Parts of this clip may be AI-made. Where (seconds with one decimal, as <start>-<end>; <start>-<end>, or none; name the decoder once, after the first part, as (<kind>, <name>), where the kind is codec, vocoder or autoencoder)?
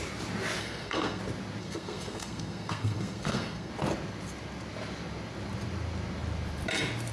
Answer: 0.6-1.2 (codec, SNAC); 1.6-3.7